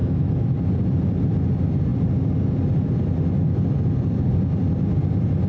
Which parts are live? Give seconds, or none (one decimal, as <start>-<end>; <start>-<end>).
0.6-5.5